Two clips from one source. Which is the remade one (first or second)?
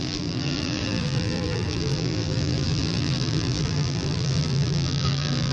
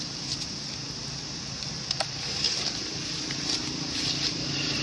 first